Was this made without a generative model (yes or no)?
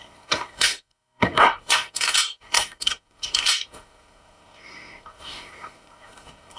no